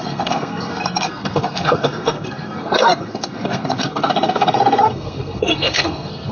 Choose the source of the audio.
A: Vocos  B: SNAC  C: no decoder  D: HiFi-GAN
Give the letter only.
B